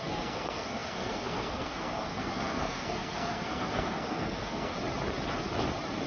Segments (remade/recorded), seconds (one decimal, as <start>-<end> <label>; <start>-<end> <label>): 0.0-4.7 remade; 4.7-6.1 recorded

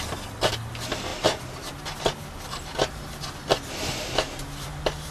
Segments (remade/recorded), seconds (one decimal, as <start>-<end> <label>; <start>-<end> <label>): 0.0-5.1 recorded

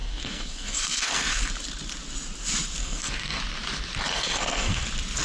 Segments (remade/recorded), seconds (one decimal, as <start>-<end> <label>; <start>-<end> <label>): 0.0-1.5 remade; 1.5-2.8 recorded; 2.8-3.4 remade; 3.4-4.1 recorded; 4.1-4.8 remade; 4.8-5.2 recorded

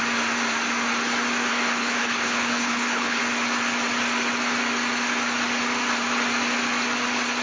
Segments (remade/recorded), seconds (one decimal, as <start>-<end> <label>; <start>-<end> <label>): 0.0-1.5 recorded; 1.5-3.2 remade; 3.2-7.4 recorded